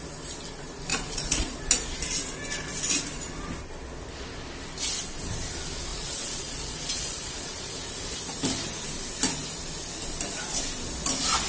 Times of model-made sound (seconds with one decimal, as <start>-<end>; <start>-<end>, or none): 0.9-1.6; 5.9-7.7